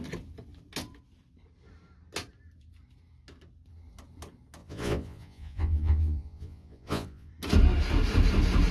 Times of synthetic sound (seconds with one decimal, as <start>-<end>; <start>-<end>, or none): 4.6-7.3